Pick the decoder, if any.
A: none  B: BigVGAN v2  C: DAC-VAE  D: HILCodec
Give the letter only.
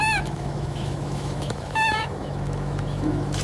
C